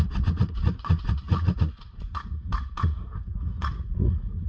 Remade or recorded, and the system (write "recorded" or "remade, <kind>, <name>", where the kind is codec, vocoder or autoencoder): remade, vocoder, Vocos